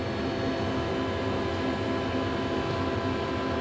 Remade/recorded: recorded